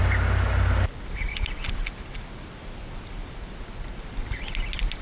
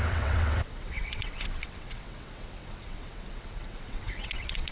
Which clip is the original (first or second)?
first